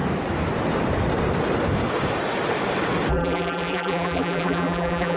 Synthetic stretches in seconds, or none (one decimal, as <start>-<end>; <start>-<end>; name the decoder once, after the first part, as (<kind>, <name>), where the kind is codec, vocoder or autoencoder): 3.1-5.2 (vocoder, BigVGAN v2)